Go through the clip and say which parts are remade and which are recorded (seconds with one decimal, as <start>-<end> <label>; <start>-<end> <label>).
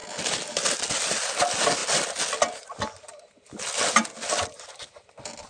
0.0-5.5 recorded